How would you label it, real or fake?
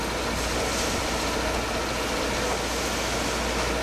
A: real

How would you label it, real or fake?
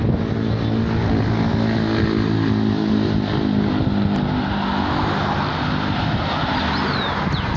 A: real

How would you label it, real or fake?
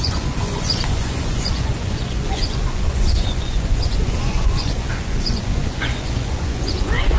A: fake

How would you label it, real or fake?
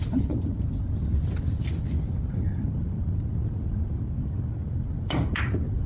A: real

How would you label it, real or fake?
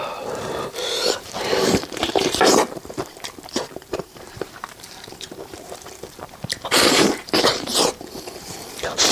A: fake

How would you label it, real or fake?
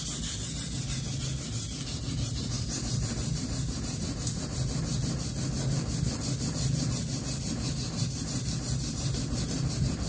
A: real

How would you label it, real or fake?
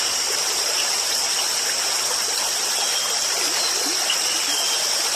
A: real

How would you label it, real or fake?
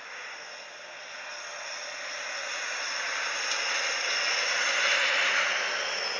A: real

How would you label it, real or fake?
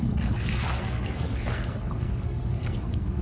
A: fake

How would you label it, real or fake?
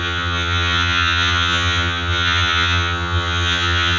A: fake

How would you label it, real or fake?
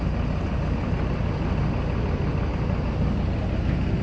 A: real